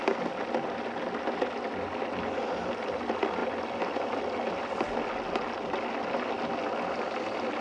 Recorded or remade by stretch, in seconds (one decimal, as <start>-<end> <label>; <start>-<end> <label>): 0.0-7.6 recorded